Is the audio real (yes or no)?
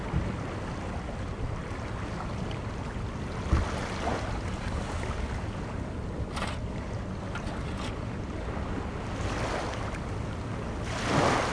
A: yes